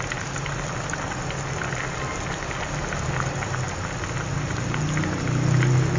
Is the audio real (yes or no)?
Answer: yes